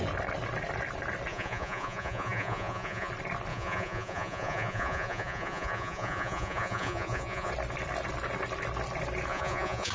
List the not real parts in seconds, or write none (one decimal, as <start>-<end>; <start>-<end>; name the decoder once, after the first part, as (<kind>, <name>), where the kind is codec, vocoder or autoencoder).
1.3-3.1 (vocoder, Vocos); 3.5-7.5; 9.3-9.9